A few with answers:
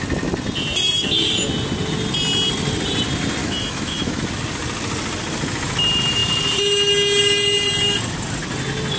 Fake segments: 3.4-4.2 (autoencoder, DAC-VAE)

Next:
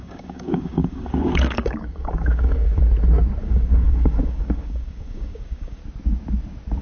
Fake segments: 0.0-2.8 (codec, DAC); 3.4-5.8

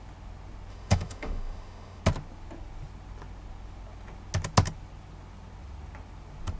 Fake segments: 0.7-2.0 (autoencoder, DAC-VAE)

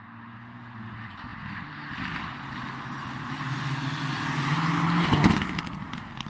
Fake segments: none

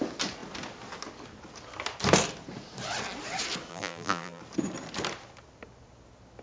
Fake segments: 3.7-4.4 (vocoder, BigVGAN v2)

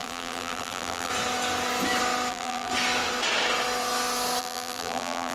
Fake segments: 0.0-1.1 (vocoder, BigVGAN v2); 2.3-2.7; 4.4-5.3

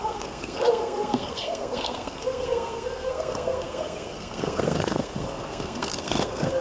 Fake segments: 0.0-6.6 (codec, SNAC)